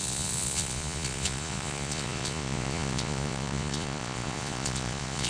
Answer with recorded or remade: remade